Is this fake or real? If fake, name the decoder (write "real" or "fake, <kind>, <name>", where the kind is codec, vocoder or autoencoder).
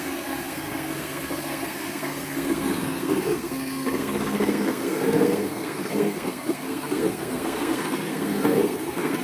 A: fake, codec, SNAC